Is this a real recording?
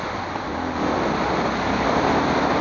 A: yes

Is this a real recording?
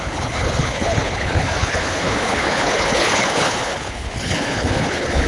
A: no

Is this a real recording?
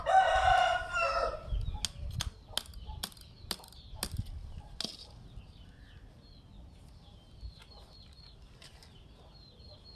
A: yes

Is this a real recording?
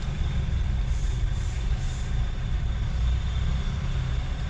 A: yes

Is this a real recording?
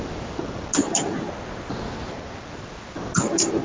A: yes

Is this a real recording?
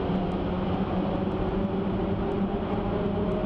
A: yes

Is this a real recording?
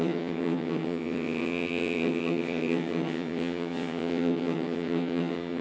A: no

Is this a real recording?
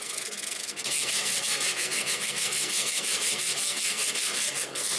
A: no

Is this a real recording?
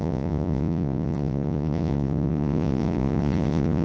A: no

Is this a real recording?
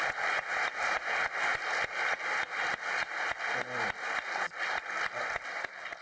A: yes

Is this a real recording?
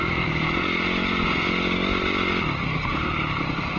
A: yes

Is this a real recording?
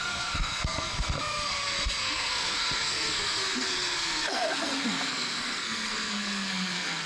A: no